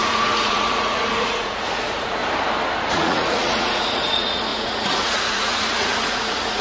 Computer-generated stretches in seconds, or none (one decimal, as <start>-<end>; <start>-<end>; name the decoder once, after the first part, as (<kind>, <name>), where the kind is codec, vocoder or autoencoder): 0.0-2.2 (vocoder, Vocos); 2.8-6.6